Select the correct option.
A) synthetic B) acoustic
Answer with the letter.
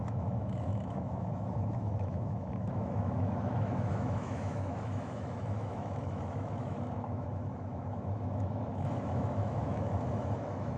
A